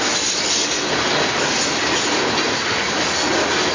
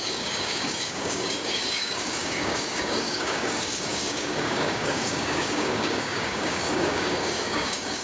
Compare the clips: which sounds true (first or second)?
first